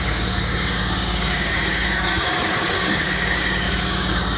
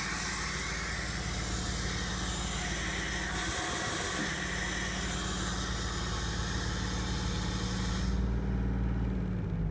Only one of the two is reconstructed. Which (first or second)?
first